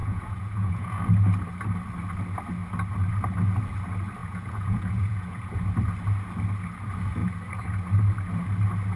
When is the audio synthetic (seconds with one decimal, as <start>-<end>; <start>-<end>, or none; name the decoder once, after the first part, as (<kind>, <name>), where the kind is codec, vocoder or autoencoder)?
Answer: 0.0-1.0 (vocoder, Vocos); 4.2-5.6

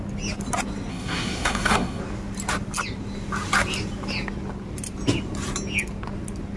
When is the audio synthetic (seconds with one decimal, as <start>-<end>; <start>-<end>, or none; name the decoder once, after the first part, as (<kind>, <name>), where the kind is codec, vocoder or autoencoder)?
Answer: 0.9-2.0 (codec, SNAC)

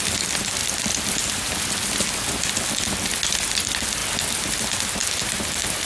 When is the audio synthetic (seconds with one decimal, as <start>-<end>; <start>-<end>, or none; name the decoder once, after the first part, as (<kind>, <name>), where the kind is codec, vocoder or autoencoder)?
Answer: 0.6-2.4 (vocoder, BigVGAN v2)

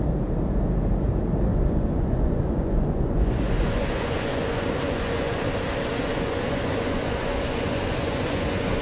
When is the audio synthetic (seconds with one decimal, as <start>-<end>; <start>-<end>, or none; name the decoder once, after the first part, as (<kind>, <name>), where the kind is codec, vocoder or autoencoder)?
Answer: 1.5-5.4 (vocoder, Vocos); 5.9-8.8